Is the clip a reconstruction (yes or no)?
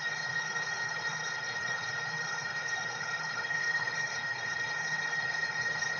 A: yes